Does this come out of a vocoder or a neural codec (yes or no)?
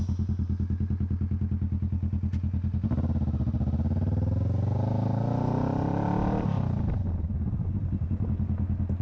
no